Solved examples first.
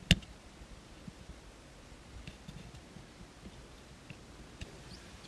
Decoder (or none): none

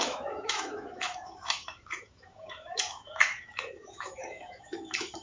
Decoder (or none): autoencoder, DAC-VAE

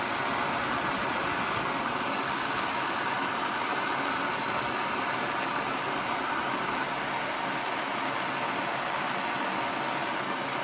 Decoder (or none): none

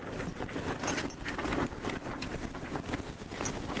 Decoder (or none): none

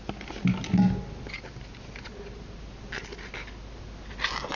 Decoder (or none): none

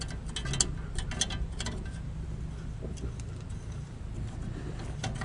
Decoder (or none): none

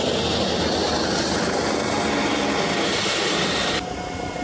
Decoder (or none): none